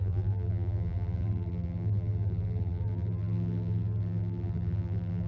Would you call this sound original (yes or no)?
no